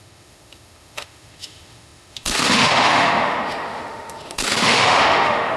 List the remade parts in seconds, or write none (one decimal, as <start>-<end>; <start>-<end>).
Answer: 0.0-5.6